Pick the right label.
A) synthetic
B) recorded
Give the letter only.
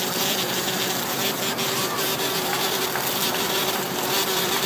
A